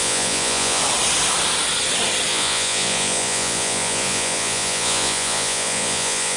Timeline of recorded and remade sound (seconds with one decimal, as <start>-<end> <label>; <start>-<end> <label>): 0.0-0.8 remade; 0.8-2.3 recorded; 2.3-6.4 remade